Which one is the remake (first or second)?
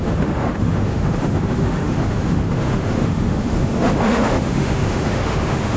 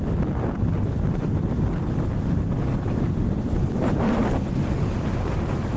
first